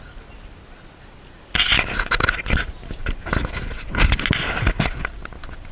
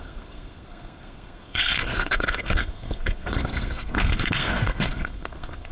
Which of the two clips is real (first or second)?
first